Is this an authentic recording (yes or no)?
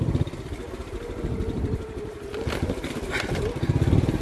yes